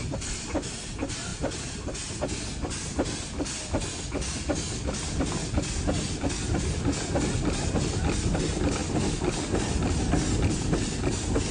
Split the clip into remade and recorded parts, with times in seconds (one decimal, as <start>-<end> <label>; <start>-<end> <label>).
0.0-11.5 recorded